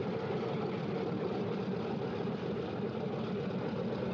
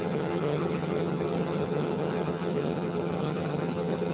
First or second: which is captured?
first